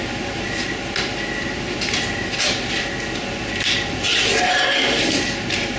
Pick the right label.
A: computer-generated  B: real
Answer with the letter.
B